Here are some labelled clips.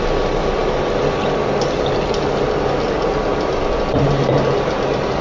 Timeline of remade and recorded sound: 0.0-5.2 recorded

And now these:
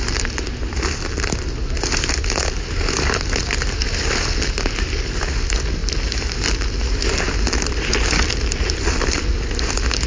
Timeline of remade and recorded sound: 0.0-10.1 recorded

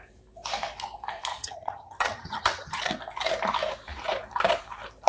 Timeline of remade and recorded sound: 0.0-1.3 recorded; 1.3-2.8 remade; 2.8-5.1 recorded

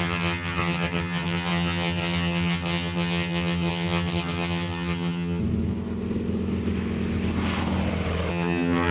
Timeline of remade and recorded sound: 0.0-5.4 remade; 5.4-8.3 recorded; 8.3-8.9 remade

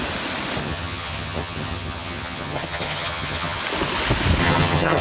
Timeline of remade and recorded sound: 0.0-0.6 recorded; 0.6-3.6 remade; 3.6-4.4 recorded; 4.4-5.0 remade

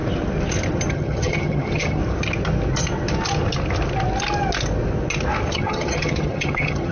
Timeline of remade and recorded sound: 0.0-0.9 recorded; 0.9-2.0 remade; 2.0-5.5 recorded; 5.5-6.9 remade